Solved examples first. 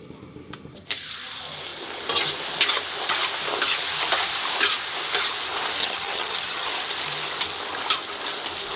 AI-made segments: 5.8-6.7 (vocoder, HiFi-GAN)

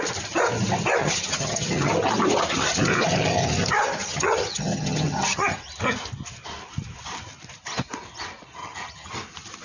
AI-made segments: 1.0-1.9 (vocoder, HiFi-GAN); 4.0-5.6; 8.6-9.1